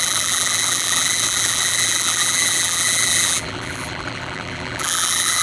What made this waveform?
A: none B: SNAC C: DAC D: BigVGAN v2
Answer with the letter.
D